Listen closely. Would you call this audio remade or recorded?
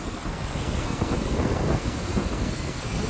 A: remade